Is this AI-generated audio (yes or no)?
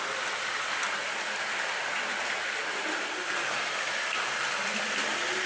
no